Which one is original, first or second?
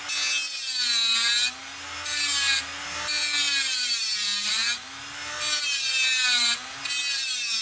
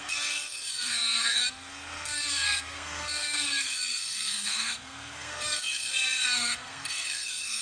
first